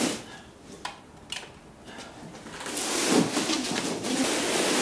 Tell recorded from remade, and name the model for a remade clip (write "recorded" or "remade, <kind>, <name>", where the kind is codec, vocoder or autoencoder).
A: recorded